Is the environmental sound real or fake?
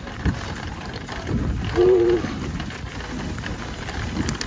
real